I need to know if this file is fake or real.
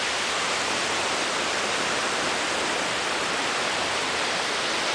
real